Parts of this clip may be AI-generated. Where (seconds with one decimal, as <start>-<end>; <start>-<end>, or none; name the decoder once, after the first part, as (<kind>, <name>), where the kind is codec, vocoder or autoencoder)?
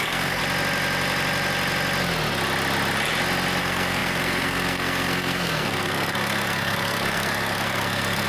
0.0-0.4 (codec, SNAC); 3.6-8.3